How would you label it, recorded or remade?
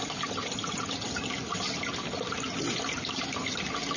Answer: recorded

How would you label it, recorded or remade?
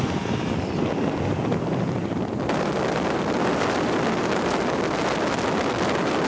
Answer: recorded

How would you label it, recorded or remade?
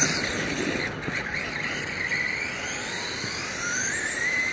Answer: recorded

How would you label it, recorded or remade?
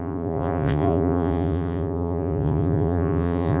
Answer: remade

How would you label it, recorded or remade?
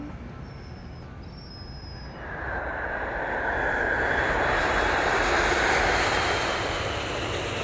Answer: recorded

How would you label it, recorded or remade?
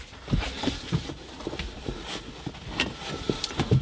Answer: recorded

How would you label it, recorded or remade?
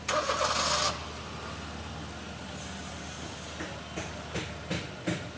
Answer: recorded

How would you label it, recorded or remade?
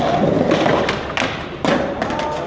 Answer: recorded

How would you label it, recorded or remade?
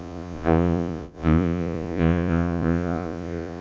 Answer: remade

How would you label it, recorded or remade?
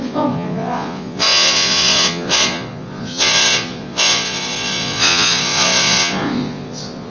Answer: remade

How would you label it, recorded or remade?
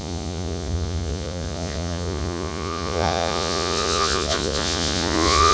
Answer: remade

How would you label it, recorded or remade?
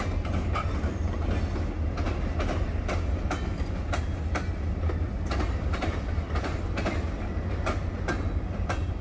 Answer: recorded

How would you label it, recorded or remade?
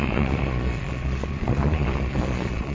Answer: remade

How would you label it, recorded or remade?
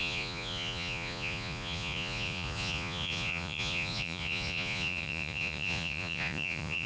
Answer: remade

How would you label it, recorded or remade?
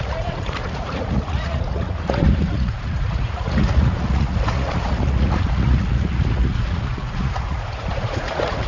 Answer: remade